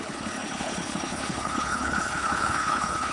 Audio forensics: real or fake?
fake